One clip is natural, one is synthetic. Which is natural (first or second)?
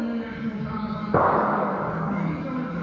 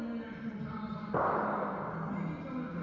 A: second